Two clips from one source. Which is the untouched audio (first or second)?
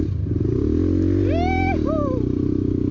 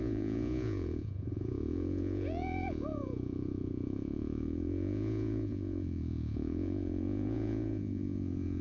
first